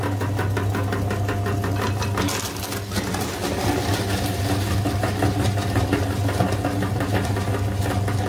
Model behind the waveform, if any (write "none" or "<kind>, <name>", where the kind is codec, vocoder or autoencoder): none